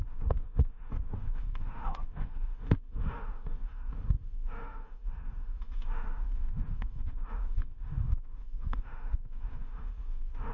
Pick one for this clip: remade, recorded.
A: remade